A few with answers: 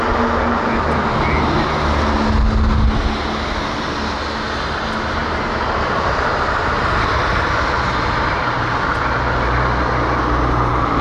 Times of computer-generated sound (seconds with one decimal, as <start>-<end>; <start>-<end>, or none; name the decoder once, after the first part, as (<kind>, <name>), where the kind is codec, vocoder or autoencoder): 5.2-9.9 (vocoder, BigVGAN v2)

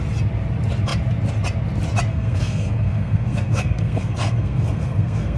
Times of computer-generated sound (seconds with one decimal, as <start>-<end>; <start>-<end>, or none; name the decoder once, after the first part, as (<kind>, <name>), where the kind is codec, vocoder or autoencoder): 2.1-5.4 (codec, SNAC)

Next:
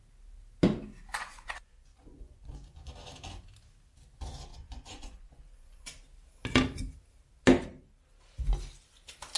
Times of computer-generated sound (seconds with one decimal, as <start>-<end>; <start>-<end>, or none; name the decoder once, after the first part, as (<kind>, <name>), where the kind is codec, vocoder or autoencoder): 1.1-2.9 (vocoder, Vocos); 4.5-6.0